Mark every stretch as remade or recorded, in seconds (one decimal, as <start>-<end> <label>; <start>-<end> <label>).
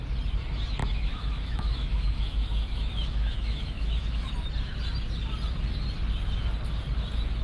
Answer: 0.0-0.8 recorded; 0.8-4.3 remade; 4.3-7.4 recorded